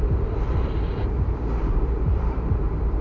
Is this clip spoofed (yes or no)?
yes